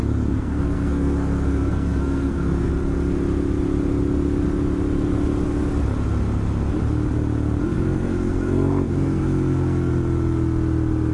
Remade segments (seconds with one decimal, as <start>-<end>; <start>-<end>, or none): 0.0-2.7; 7.6-9.9